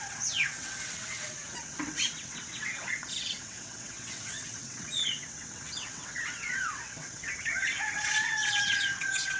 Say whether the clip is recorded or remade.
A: remade